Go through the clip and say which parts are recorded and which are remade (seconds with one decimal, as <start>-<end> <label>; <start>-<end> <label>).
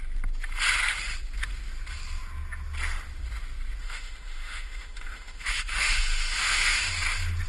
0.0-3.8 recorded; 3.8-6.9 remade; 6.9-7.5 recorded